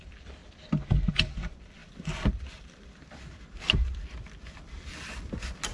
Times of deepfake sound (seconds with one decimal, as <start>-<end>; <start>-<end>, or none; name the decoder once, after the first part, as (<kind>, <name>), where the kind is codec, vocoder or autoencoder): none